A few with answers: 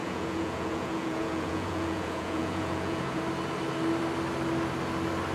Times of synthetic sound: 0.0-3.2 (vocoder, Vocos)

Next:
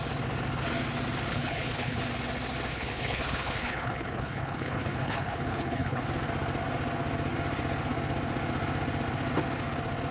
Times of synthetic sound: 1.3-2.0 (codec, HILCodec); 2.7-6.0

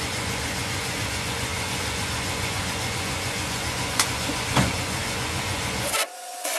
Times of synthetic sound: 0.0-6.6 (vocoder, Vocos)

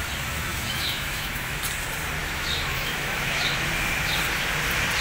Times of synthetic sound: 0.5-1.6 (autoencoder, DAC-VAE); 2.2-3.6

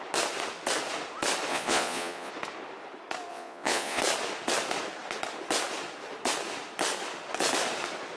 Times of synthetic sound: 1.5-2.3 (vocoder, Vocos); 3.3-4.0